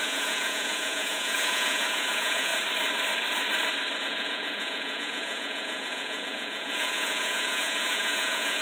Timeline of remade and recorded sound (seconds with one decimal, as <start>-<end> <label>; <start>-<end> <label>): 0.0-2.5 remade; 2.5-4.0 recorded; 4.0-8.6 remade